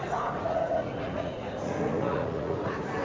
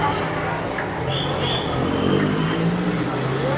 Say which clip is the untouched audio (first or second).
second